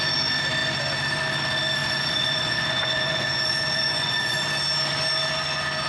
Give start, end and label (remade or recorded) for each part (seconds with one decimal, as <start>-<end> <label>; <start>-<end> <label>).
0.0-1.8 recorded; 1.8-4.4 remade; 4.4-5.9 recorded